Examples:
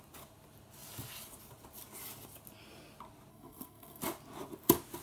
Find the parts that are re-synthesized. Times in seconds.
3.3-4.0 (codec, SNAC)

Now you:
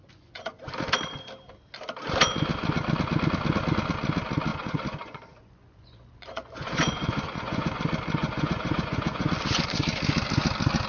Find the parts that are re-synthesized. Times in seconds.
0.0-0.6 (vocoder, Vocos); 4.5-7.8; 8.2-9.3

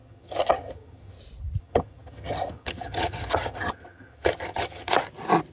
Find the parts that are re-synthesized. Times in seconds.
0.0-1.2 (vocoder, HiFi-GAN); 1.6-4.9

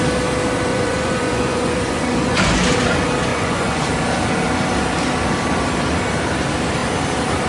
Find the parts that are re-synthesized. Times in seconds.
0.7-2.6 (vocoder, Vocos); 3.3-3.9